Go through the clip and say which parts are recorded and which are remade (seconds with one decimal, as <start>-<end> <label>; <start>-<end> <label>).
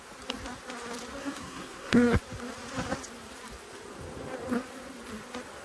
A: 0.0-1.2 recorded; 1.2-2.2 remade; 2.2-5.6 recorded